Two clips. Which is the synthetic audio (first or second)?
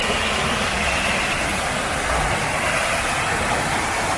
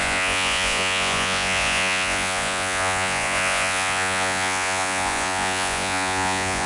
second